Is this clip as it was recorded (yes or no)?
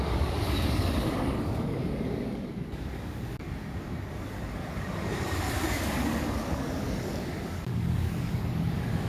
no